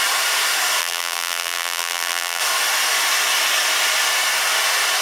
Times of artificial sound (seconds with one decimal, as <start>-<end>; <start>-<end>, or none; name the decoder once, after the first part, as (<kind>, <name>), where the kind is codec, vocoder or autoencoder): 0.8-2.4 (vocoder, BigVGAN v2)